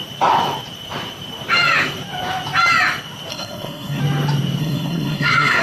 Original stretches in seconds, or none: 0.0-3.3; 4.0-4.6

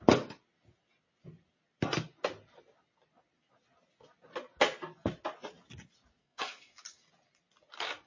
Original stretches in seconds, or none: 0.0-6.2; 6.7-8.1

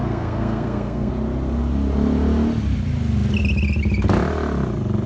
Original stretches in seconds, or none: 1.1-5.1

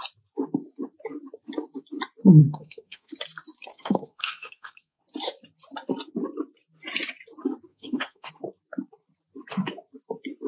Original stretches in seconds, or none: 0.0-2.4; 3.1-3.7; 5.0-7.7; 8.3-10.5